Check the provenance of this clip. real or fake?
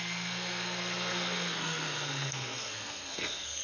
fake